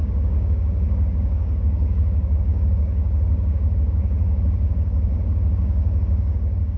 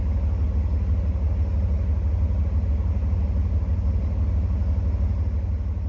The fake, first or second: first